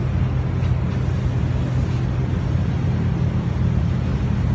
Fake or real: real